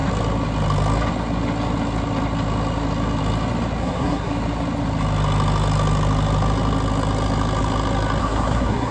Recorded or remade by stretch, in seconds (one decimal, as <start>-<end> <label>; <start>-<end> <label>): 0.0-3.8 recorded; 3.8-4.3 remade; 4.3-8.2 recorded; 8.2-8.9 remade